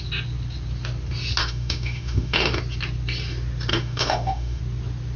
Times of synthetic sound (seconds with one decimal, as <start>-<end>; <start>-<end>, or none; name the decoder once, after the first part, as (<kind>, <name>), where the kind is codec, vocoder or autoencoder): 1.4-2.6 (autoencoder, DAC-VAE); 3.7-4.6